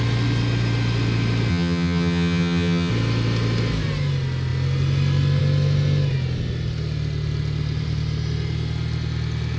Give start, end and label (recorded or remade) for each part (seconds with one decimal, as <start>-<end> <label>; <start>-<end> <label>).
0.0-1.5 recorded; 1.5-2.9 remade; 2.9-9.6 recorded

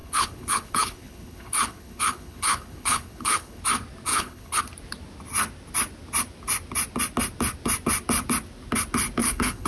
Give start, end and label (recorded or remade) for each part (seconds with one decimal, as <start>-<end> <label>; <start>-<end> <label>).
0.0-3.6 remade; 3.6-4.1 recorded; 4.1-4.6 remade; 4.6-9.2 recorded; 9.2-9.7 remade

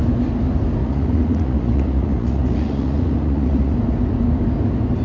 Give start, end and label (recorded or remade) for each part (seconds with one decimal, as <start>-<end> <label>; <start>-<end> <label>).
0.0-0.8 recorded; 0.8-3.7 remade; 3.7-5.0 recorded

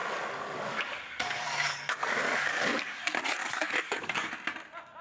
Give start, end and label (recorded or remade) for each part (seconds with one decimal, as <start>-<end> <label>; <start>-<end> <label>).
0.0-3.0 remade; 3.0-3.4 recorded; 3.4-4.3 remade; 4.3-5.0 recorded

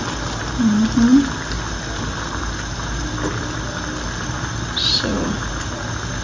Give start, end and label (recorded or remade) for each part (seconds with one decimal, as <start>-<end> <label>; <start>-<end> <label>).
0.0-6.2 recorded

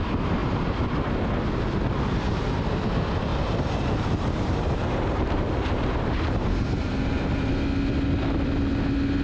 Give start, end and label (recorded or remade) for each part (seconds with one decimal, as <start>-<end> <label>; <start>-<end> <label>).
0.0-0.4 recorded; 0.4-1.4 remade; 1.4-3.3 recorded; 3.3-7.5 remade; 7.5-9.2 recorded

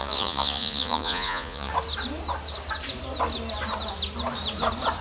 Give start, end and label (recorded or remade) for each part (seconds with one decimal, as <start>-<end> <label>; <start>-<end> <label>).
0.0-1.7 remade; 1.7-5.0 recorded